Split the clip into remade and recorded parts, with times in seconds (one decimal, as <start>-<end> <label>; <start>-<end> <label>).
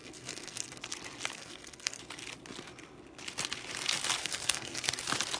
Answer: 0.0-0.8 remade; 0.8-1.3 recorded; 1.3-2.0 remade; 2.0-4.2 recorded; 4.2-5.0 remade; 5.0-5.4 recorded